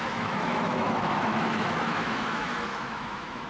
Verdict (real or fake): fake